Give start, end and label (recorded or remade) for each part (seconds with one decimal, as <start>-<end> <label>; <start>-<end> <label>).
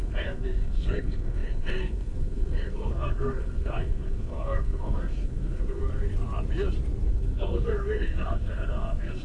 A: 0.0-5.8 remade; 5.8-7.1 recorded; 7.1-9.2 remade